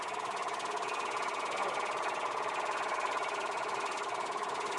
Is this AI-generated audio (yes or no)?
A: no